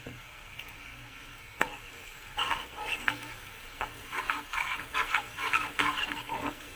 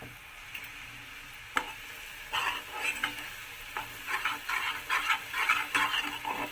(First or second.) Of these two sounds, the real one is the second